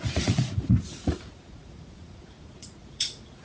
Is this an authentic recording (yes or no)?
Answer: no